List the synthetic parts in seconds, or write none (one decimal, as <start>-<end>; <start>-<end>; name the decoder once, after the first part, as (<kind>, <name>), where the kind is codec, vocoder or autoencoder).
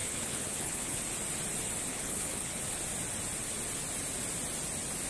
0.0-1.0 (codec, HILCodec); 1.9-2.6